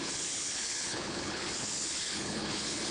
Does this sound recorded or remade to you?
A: remade